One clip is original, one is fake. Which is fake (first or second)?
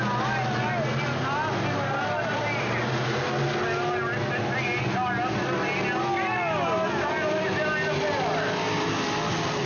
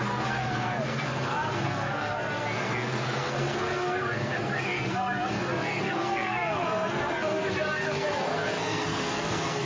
second